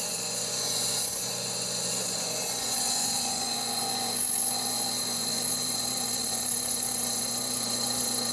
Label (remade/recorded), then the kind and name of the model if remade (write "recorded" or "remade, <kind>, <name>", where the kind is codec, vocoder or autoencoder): remade, vocoder, Vocos